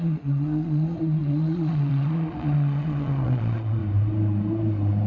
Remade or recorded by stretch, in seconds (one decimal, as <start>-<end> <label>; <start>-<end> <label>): 0.0-3.8 remade; 3.8-5.1 recorded